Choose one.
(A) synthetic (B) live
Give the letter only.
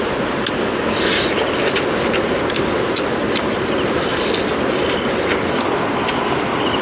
B